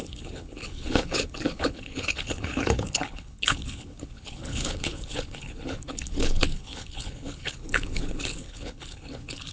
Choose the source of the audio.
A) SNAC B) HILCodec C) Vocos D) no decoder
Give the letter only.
B